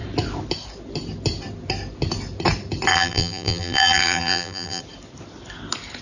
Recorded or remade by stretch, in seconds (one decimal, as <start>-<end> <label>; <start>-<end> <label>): 0.0-2.9 recorded; 2.9-4.8 remade; 4.8-6.0 recorded